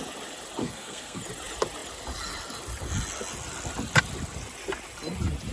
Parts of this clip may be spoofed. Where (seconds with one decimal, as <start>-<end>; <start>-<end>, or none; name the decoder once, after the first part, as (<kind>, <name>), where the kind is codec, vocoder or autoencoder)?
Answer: 0.6-1.2 (codec, SNAC)

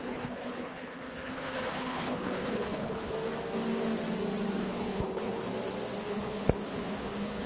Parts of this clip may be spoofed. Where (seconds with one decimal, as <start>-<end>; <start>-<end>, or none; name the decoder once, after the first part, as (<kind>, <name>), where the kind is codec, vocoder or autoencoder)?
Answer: 0.0-3.1 (codec, HILCodec); 4.6-5.5; 6.0-7.5

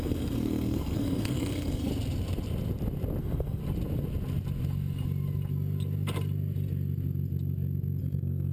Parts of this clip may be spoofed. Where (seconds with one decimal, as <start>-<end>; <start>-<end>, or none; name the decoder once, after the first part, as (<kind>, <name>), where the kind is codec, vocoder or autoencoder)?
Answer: 0.0-1.9 (codec, SNAC); 3.2-3.6; 8.0-8.5

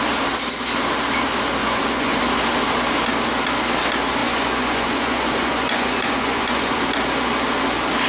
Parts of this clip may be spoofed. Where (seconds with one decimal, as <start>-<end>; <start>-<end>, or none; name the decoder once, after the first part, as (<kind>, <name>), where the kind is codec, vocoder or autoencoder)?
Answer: 1.6-2.2 (vocoder, Vocos); 4.2-6.8

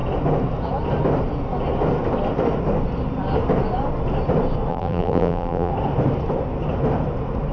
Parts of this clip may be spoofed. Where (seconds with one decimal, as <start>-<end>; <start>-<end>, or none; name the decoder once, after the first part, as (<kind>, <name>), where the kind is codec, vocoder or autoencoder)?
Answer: 4.7-5.7 (vocoder, BigVGAN v2)

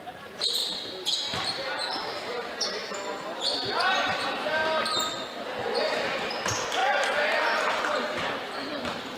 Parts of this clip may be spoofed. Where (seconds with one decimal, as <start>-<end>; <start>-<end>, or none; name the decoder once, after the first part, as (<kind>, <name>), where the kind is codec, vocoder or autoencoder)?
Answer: 0.0-0.6 (vocoder, BigVGAN v2); 2.0-2.8; 3.9-4.6; 5.8-9.2

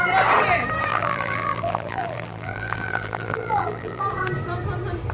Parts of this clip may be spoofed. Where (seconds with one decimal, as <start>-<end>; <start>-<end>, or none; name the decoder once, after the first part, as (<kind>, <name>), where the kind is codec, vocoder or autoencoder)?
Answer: 0.9-4.0 (vocoder, BigVGAN v2)

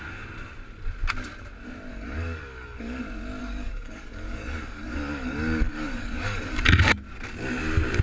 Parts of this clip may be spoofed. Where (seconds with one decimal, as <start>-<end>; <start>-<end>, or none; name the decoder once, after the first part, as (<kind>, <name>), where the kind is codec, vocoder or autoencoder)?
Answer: 1.9-3.0 (codec, DAC); 3.4-6.6